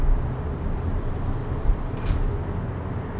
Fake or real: real